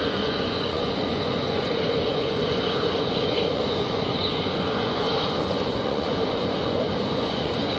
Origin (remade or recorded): remade